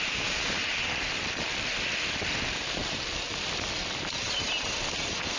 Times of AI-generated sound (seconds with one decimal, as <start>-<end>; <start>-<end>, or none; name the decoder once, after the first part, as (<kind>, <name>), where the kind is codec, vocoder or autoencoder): none